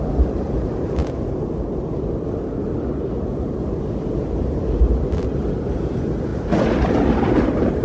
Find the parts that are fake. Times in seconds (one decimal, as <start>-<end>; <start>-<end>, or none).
none